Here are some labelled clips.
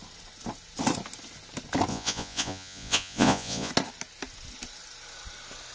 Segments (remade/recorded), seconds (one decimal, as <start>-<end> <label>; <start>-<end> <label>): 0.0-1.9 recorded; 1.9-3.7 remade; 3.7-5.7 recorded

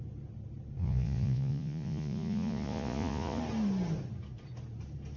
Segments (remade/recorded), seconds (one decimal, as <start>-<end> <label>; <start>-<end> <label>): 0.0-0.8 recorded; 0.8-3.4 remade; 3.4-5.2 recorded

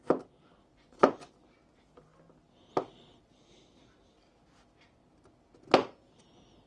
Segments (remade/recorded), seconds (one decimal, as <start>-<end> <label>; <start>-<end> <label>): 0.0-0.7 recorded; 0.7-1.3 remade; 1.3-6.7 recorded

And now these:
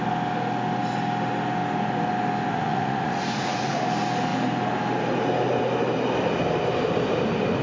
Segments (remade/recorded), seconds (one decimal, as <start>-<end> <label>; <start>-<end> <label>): 0.0-2.5 recorded; 2.5-3.8 remade; 3.8-7.6 recorded

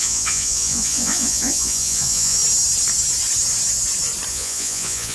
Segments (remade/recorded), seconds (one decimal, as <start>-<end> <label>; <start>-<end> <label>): 0.0-2.4 remade; 2.4-4.3 recorded; 4.3-5.1 remade

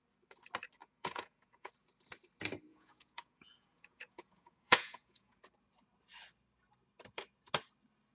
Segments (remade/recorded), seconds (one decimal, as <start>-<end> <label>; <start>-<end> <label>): 0.0-0.8 recorded; 0.8-1.7 remade; 1.7-2.7 recorded; 2.7-5.4 remade; 5.4-8.1 recorded

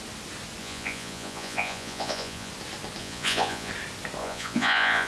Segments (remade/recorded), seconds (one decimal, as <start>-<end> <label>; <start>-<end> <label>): 0.0-0.6 recorded; 0.6-2.5 remade; 2.5-3.0 recorded; 3.0-3.7 remade; 3.7-4.2 recorded; 4.2-5.1 remade

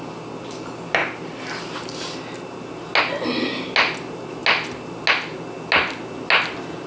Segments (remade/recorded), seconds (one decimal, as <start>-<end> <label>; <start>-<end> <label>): 0.0-6.9 recorded